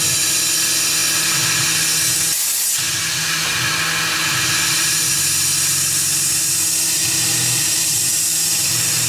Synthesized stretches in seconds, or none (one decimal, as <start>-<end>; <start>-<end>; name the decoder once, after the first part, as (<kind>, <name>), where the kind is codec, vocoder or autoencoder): 7.0-9.1 (vocoder, BigVGAN v2)